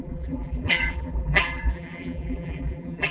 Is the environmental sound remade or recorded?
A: remade